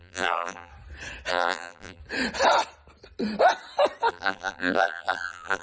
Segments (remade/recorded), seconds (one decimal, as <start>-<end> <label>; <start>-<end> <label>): 0.0-0.7 remade; 0.7-1.3 recorded; 1.3-2.0 remade; 2.0-4.1 recorded; 4.1-5.6 remade

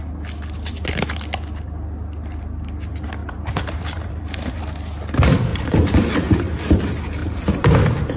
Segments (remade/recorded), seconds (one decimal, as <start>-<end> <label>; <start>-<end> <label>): 0.0-3.2 recorded; 3.2-4.6 remade; 4.6-5.5 recorded; 5.5-6.8 remade; 6.8-7.2 recorded; 7.2-7.7 remade; 7.7-8.2 recorded

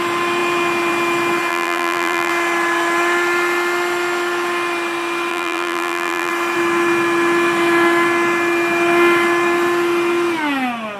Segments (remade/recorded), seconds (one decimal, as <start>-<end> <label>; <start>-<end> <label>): 0.0-1.5 recorded; 1.5-2.3 remade; 2.3-5.3 recorded; 5.3-6.3 remade; 6.3-11.0 recorded

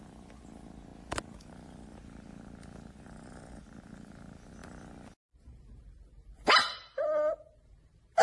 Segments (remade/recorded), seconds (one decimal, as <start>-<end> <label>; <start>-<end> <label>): 0.0-8.2 recorded

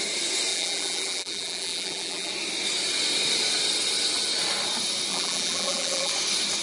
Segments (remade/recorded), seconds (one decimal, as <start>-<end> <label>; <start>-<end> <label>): 0.0-0.5 recorded; 0.5-2.3 remade; 2.3-5.1 recorded; 5.1-6.1 remade; 6.1-6.6 recorded

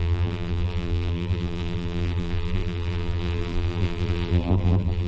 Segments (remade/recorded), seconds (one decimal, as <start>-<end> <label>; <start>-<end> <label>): 0.0-5.1 remade

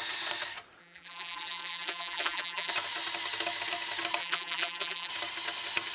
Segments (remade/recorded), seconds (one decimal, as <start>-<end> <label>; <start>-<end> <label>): 0.0-0.8 recorded; 0.8-2.7 remade; 2.7-4.2 recorded; 4.2-5.1 remade; 5.1-5.9 recorded